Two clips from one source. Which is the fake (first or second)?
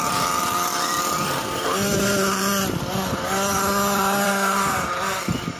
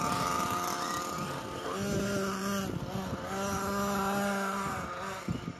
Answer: first